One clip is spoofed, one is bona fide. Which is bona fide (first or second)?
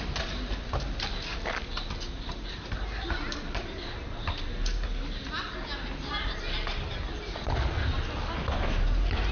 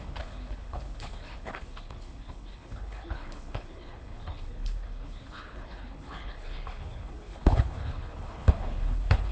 first